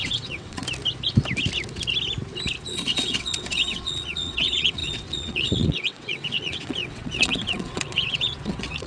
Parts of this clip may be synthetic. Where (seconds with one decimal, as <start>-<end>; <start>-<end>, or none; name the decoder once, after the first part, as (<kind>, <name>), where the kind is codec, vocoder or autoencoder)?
0.0-0.6 (vocoder, WaveNeXt); 2.6-8.9